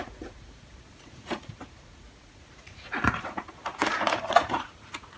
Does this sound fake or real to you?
fake